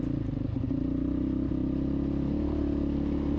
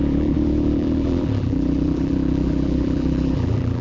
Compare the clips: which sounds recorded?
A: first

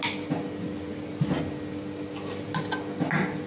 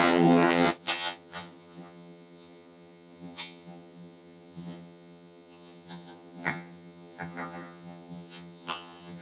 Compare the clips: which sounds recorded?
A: first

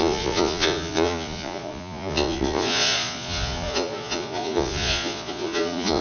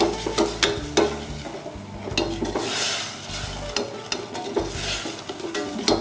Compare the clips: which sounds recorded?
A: second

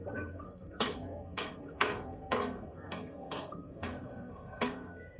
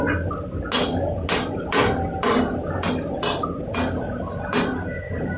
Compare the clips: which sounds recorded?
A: second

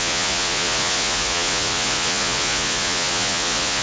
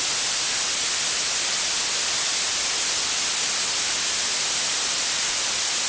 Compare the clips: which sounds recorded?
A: second